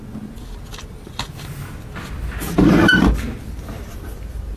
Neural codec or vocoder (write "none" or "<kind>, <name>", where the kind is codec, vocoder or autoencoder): none